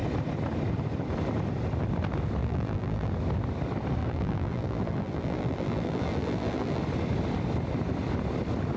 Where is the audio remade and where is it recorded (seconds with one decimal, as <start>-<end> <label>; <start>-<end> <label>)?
0.0-2.4 recorded; 2.4-3.1 remade; 3.1-4.0 recorded; 4.0-6.8 remade; 6.8-8.8 recorded